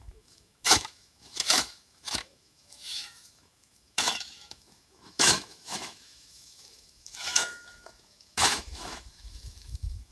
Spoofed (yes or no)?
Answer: yes